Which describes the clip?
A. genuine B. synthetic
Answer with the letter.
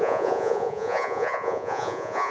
B